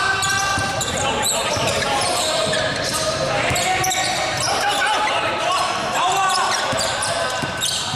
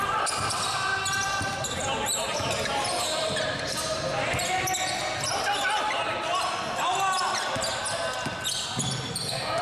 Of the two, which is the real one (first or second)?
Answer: second